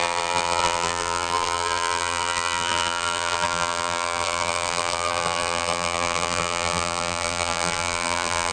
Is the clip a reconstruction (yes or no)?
yes